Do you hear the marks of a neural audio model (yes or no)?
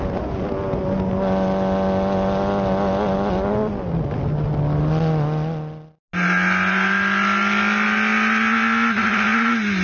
no